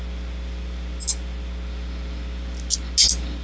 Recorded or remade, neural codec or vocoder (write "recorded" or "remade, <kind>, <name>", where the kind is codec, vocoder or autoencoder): recorded